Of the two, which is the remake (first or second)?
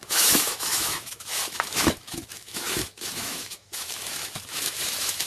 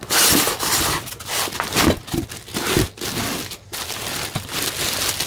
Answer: first